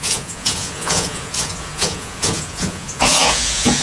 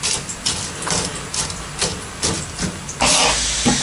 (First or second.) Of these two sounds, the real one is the second